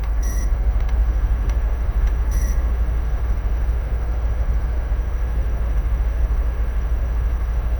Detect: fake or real fake